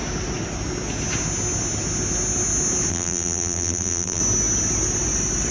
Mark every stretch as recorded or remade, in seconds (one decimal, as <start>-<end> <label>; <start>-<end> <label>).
0.0-2.9 recorded; 2.9-4.2 remade; 4.2-5.5 recorded